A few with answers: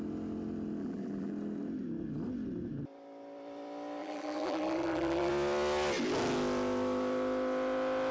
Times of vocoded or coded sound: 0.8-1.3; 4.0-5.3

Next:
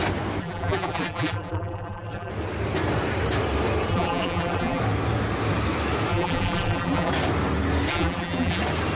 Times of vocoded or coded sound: 0.4-2.3; 3.9-4.8; 6.1-7.1; 7.9-8.6